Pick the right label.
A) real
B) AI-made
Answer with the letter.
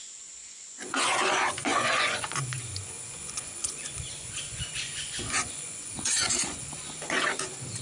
B